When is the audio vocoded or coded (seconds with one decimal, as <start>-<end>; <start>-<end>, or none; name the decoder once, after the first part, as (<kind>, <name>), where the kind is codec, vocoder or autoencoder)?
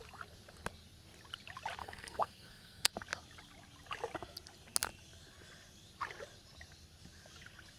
1.8-2.9 (codec, SNAC)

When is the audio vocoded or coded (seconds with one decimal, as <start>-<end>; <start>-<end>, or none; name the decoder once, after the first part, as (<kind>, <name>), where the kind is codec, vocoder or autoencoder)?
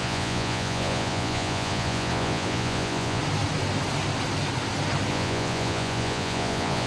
0.0-3.2 (vocoder, Vocos); 5.1-6.9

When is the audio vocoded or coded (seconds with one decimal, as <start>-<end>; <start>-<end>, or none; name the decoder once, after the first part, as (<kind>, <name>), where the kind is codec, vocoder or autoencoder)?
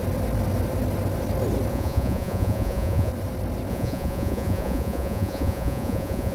1.7-3.1 (vocoder, Vocos); 3.7-6.3